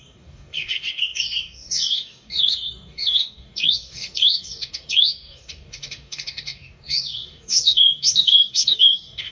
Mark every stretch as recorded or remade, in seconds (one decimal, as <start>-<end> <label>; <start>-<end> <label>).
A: 0.0-9.3 remade